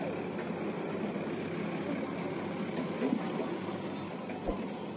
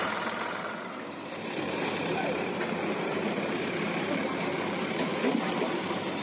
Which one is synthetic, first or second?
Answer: second